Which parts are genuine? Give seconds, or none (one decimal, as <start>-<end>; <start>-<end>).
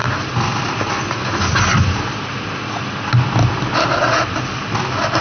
0.0-5.2